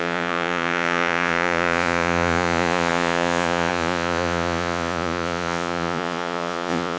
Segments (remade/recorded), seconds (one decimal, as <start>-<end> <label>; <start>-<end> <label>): 0.0-7.0 remade